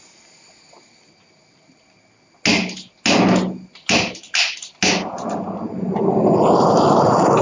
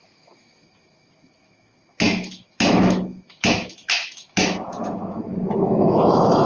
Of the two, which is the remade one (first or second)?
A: second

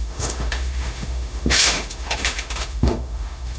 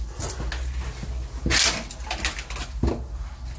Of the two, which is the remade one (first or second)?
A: first